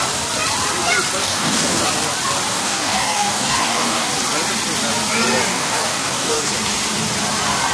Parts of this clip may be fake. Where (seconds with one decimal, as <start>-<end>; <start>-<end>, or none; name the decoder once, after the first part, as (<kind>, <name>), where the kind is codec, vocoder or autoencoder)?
1.2-1.8 (codec, DAC); 2.5-4.1; 5.5-6.5